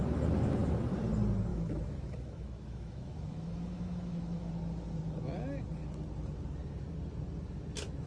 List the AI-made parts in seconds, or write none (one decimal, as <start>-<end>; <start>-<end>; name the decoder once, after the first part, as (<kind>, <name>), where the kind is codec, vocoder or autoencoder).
1.5-4.5 (autoencoder, DAC-VAE)